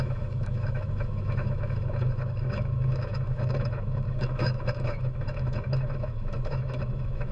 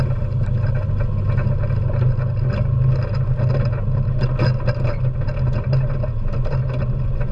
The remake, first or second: first